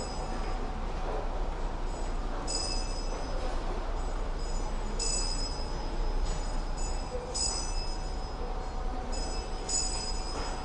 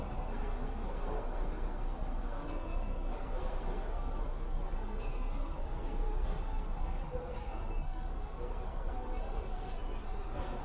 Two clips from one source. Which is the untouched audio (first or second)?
first